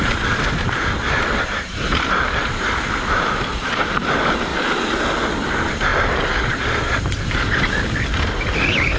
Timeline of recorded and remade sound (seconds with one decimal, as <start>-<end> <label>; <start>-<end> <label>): 0.0-4.5 remade; 4.5-5.5 recorded; 5.5-9.0 remade